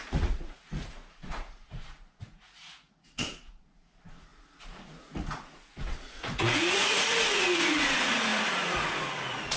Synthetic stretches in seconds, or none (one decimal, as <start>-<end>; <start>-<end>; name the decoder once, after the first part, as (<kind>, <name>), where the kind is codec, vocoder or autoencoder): 0.0-9.6 (vocoder, Vocos)